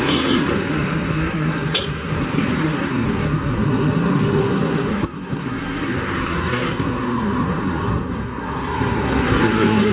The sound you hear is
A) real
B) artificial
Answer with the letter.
B